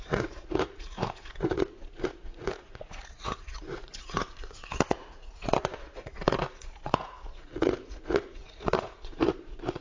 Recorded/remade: remade